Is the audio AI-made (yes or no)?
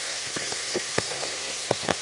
yes